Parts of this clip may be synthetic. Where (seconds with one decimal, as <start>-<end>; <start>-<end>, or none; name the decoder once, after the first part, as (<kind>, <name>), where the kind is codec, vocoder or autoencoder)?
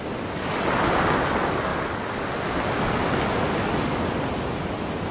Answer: none